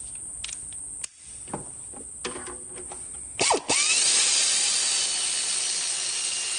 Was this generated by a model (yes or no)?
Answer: no